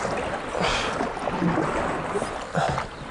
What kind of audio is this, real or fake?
real